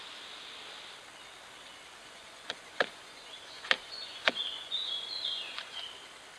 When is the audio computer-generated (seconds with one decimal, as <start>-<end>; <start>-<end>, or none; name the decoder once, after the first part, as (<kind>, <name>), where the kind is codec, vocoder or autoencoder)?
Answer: 2.0-5.8 (vocoder, Vocos)